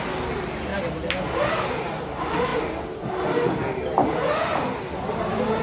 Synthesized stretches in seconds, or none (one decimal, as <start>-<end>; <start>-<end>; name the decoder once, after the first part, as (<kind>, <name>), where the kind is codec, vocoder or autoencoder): none